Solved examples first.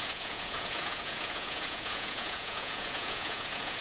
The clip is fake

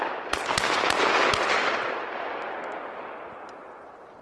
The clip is real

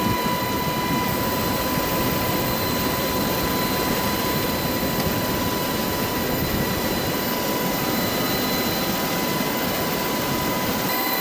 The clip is real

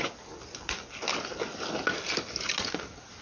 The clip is real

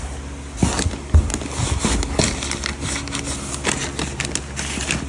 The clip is real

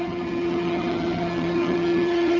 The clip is fake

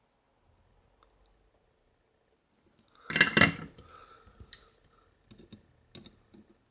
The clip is real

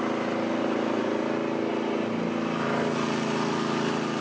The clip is real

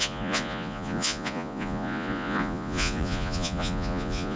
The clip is fake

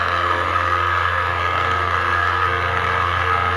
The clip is fake